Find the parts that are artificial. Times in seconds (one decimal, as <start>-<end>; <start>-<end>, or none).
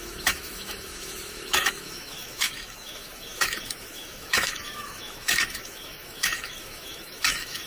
0.0-7.7